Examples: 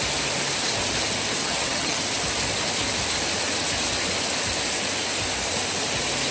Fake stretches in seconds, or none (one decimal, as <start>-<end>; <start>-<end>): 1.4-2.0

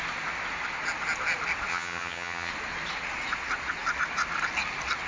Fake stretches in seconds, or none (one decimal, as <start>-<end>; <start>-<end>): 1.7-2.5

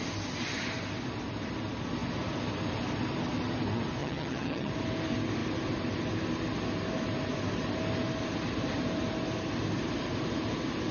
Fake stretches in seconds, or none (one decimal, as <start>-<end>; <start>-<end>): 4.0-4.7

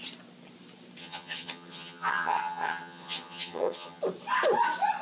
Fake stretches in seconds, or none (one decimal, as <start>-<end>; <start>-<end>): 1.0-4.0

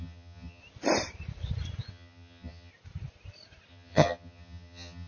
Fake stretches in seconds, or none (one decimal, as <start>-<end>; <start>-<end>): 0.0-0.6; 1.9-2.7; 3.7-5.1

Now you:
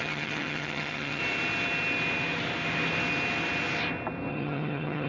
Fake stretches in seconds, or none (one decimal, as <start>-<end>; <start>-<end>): 0.0-1.2; 4.3-5.1

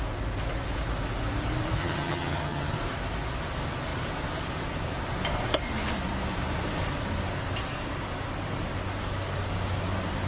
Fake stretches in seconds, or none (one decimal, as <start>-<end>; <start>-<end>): 1.8-2.7